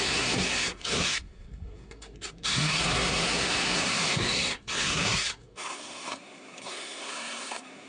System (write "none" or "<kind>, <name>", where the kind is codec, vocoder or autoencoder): codec, SNAC